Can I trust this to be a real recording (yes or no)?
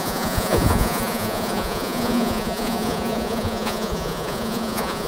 no